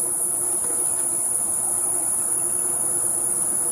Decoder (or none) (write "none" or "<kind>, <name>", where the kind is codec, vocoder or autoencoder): none